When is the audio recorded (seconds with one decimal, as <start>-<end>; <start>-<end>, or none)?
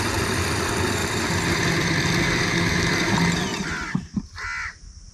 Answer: 0.0-1.0; 2.4-3.5; 4.2-5.1